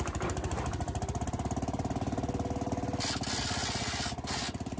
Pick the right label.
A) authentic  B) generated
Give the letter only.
A